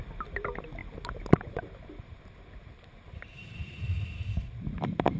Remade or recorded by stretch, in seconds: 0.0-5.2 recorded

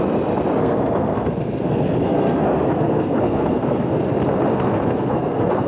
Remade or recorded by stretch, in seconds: 0.0-0.6 recorded; 0.6-4.0 remade; 4.0-4.5 recorded; 4.5-5.7 remade